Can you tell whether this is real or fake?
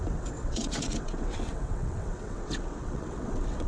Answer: fake